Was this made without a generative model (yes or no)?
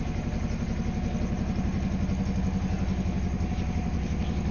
yes